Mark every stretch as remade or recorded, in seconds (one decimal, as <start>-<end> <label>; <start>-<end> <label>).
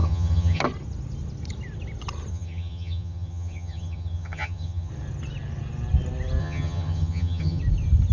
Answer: 0.0-0.6 remade; 0.6-2.3 recorded; 2.3-4.9 remade; 4.9-6.4 recorded; 6.4-7.6 remade; 7.6-8.1 recorded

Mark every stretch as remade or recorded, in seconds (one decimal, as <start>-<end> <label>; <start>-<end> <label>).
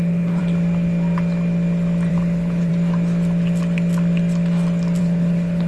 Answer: 0.0-0.4 remade; 0.4-2.1 recorded; 2.1-2.7 remade; 2.7-5.0 recorded; 5.0-5.7 remade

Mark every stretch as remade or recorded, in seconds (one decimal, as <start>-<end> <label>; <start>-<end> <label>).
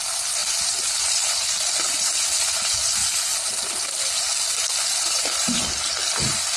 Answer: 0.0-6.6 recorded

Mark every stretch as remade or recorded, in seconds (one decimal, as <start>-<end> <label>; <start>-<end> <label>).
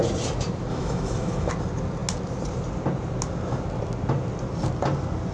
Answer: 0.0-0.7 recorded; 0.7-1.5 remade; 1.5-5.3 recorded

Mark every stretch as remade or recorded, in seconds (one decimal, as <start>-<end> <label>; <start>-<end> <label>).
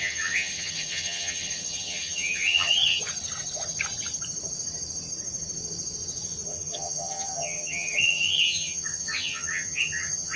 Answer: 0.0-3.0 remade; 3.0-6.5 recorded; 6.5-10.4 remade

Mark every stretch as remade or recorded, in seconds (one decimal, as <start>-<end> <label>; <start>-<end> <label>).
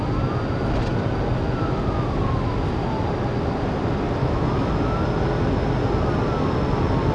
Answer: 0.0-4.2 recorded; 4.2-4.7 remade; 4.7-7.1 recorded